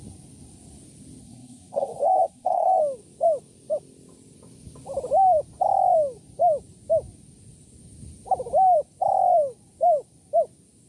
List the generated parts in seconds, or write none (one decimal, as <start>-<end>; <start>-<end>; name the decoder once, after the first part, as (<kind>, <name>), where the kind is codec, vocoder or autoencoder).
1.2-2.8 (codec, SNAC)